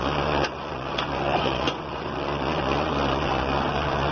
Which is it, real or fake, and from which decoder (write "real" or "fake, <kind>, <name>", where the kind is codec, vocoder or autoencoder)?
fake, vocoder, Vocos